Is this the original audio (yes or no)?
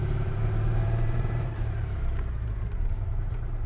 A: no